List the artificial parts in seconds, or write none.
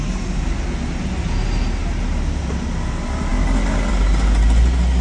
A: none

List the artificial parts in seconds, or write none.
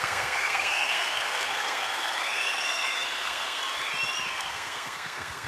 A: 0.0-3.6; 4.3-5.5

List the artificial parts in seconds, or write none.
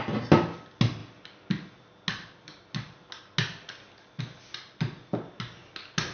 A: none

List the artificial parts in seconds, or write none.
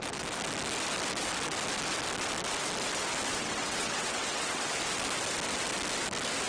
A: 3.3-4.7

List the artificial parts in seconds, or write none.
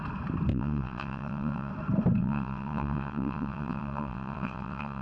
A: 0.5-1.7; 2.2-5.0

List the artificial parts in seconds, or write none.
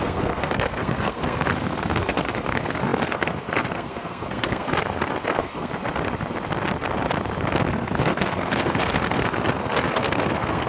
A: 0.0-5.7; 7.7-10.7